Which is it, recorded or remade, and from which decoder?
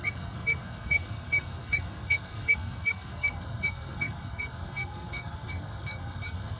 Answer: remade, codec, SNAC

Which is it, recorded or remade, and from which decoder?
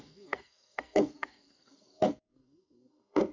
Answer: remade, codec, SNAC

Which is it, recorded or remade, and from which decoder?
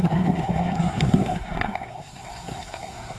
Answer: remade, codec, SNAC